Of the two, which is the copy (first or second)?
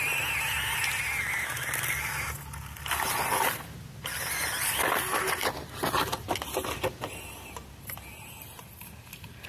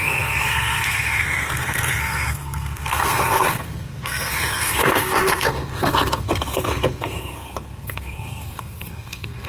second